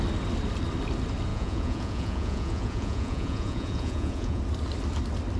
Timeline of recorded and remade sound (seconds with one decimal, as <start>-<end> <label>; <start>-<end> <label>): 0.0-1.3 recorded; 1.3-4.4 remade; 4.4-5.4 recorded